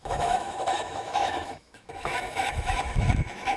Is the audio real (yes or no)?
no